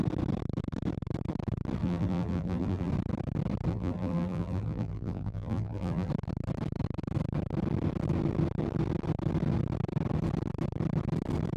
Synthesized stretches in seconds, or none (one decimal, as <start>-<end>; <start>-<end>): 1.8-2.9; 3.7-6.1

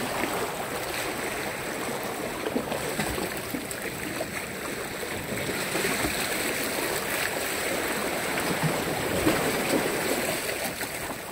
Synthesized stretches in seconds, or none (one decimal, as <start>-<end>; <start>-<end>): 8.0-10.4

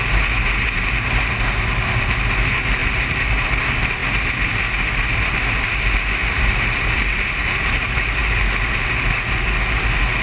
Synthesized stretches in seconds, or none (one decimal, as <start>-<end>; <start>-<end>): 2.8-3.6; 6.2-8.2

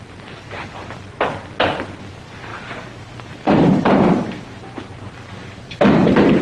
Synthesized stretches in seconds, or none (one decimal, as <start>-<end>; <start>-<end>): 2.5-5.1

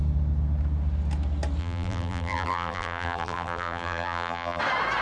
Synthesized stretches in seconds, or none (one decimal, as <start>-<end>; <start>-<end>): 1.6-4.6

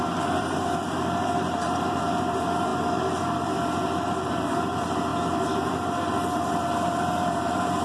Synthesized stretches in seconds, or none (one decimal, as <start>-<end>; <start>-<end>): 0.0-7.8

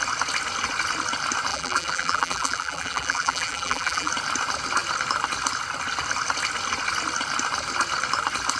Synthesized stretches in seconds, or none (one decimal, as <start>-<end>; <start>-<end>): 1.5-4.1

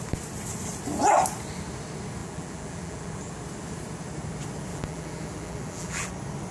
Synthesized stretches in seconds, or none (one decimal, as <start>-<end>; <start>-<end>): 2.2-3.3; 4.7-6.1